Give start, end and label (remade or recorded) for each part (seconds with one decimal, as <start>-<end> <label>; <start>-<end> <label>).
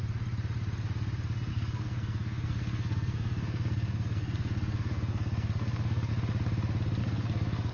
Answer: 0.0-1.5 recorded; 1.5-6.1 remade; 6.1-7.0 recorded; 7.0-7.7 remade